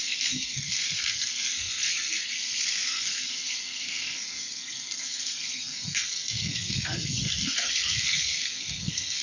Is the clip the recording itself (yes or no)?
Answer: no